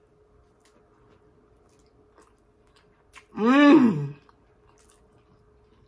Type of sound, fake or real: real